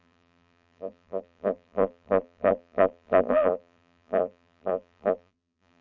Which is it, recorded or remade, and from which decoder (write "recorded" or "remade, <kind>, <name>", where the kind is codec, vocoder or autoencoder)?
remade, vocoder, BigVGAN v2